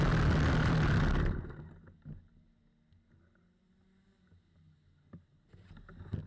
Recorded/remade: recorded